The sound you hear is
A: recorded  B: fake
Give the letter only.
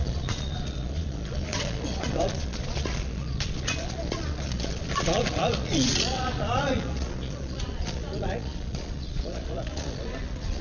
B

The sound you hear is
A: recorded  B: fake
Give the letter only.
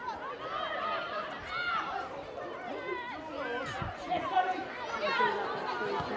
A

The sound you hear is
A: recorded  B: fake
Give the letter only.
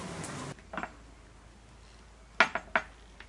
A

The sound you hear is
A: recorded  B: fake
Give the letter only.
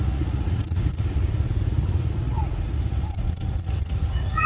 B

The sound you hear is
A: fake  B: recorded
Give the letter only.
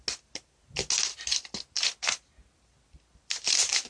B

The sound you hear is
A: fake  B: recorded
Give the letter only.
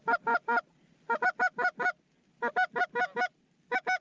B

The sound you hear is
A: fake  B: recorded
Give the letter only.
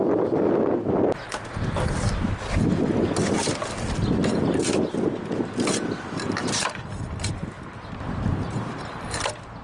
B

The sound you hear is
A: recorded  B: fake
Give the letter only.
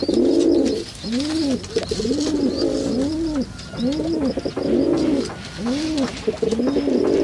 A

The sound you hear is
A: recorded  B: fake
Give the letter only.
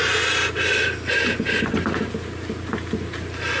A